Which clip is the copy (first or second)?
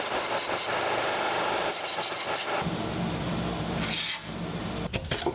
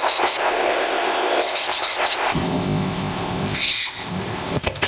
second